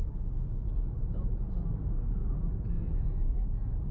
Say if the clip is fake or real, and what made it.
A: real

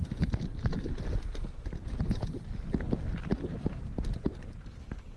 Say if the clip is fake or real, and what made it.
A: real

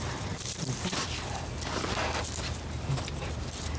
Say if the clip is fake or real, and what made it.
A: real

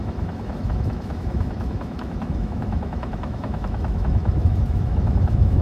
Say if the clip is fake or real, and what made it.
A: fake, autoencoder, DAC-VAE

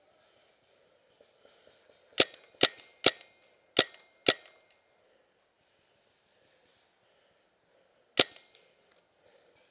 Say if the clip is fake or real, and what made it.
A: real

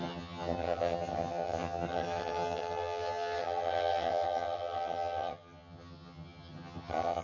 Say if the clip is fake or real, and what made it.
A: fake, vocoder, HiFi-GAN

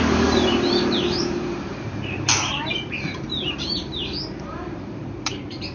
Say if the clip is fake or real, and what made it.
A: fake, vocoder, BigVGAN v2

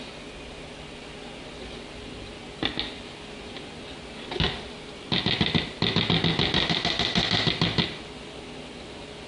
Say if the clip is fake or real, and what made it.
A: real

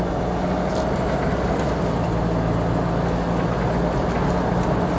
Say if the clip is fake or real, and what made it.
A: real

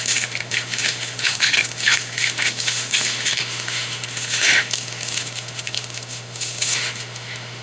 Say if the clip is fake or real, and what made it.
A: fake, autoencoder, DAC-VAE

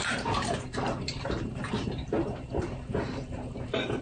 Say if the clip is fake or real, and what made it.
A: fake, vocoder, BigVGAN v2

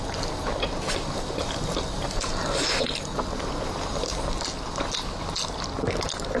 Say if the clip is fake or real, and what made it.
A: real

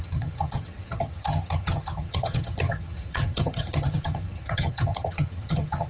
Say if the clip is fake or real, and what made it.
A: fake, vocoder, HiFi-GAN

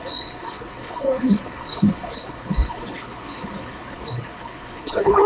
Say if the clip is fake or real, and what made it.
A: fake, codec, HILCodec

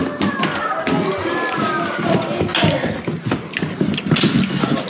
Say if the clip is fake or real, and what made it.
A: real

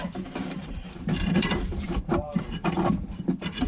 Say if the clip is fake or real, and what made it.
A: fake, vocoder, BigVGAN v2